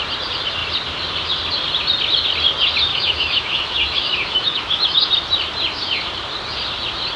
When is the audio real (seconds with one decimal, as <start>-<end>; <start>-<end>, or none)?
0.0-2.9; 5.1-7.2